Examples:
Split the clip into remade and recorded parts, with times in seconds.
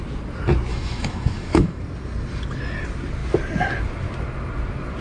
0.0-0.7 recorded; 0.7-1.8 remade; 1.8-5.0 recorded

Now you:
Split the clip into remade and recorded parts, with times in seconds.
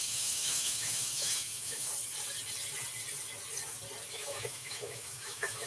0.0-1.9 remade; 1.9-4.1 recorded; 4.1-5.7 remade